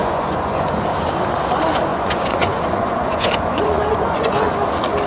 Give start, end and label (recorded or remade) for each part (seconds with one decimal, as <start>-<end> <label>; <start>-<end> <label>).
0.0-0.7 remade; 0.7-1.9 recorded; 1.9-4.5 remade; 4.5-5.1 recorded